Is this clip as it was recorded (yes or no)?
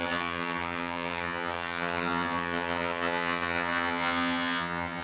no